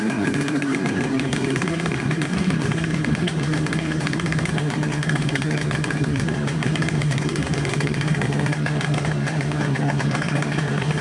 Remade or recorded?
remade